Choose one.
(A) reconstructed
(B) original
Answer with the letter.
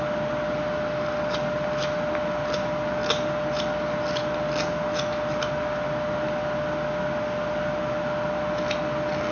B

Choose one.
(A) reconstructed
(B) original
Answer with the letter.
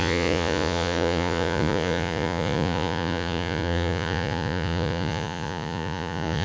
A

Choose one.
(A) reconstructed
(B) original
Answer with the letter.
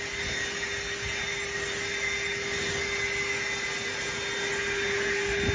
B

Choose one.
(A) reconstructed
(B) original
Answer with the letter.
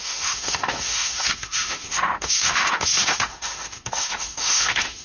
A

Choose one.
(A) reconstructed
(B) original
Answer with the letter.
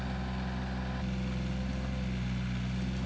B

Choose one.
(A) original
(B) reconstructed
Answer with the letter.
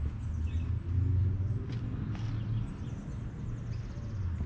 A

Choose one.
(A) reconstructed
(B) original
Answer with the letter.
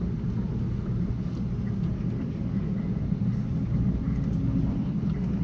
B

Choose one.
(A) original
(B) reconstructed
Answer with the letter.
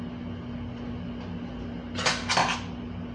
A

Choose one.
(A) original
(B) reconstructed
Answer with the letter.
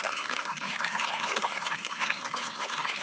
B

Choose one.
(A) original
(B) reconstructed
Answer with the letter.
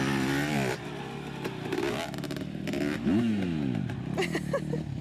A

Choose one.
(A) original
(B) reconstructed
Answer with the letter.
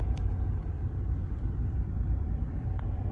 B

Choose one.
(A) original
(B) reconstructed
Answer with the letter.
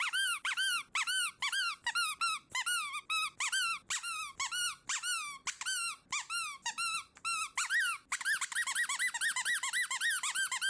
A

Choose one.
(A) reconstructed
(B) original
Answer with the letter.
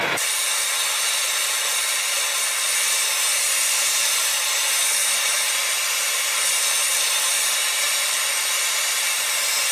B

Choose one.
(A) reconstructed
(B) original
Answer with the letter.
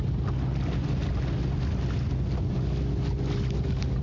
B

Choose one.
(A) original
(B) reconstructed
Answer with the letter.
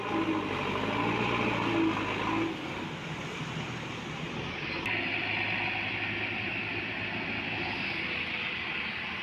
A